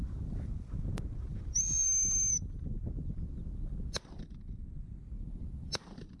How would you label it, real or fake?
fake